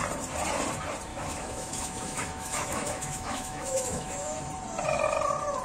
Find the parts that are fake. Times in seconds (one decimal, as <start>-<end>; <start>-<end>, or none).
1.1-4.5

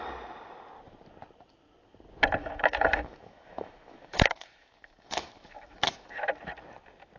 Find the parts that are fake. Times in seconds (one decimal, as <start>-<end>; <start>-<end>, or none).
2.4-6.3

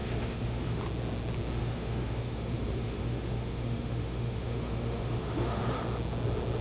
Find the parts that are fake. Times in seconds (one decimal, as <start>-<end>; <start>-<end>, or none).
0.0-0.8; 1.6-5.6